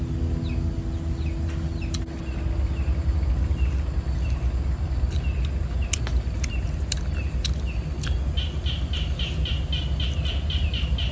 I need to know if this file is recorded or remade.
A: recorded